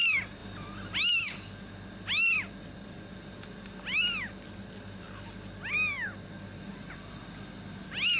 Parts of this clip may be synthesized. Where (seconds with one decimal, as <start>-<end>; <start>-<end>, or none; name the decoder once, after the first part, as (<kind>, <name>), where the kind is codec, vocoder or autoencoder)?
none

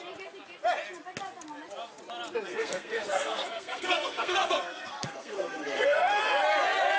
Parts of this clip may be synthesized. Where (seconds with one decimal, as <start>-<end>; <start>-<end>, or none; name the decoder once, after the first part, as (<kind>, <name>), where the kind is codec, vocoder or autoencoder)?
2.5-6.2 (codec, SNAC)

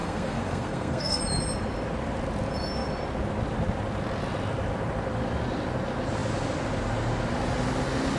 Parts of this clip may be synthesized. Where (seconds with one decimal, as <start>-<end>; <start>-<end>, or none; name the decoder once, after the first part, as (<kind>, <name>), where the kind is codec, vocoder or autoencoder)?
0.0-1.2 (codec, SNAC)

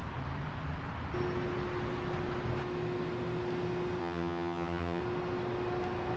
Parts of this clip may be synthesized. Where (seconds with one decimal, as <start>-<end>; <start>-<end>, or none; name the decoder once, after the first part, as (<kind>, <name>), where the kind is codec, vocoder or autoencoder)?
4.0-5.0 (vocoder, HiFi-GAN)